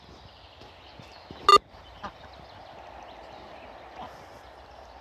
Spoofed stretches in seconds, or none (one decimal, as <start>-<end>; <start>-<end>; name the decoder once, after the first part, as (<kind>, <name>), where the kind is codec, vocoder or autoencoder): none